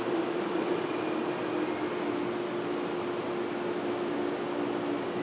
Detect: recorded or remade recorded